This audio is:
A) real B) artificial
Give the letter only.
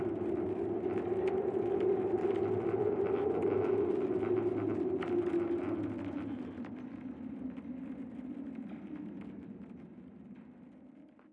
A